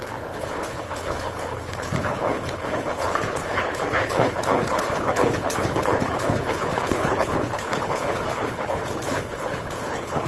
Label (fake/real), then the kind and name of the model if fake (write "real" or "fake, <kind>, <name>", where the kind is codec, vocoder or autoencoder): fake, codec, HILCodec